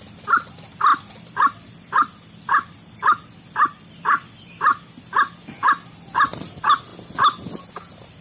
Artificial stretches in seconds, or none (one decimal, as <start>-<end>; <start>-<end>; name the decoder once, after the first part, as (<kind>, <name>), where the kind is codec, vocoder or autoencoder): 0.9-3.9 (vocoder, BigVGAN v2); 4.7-5.4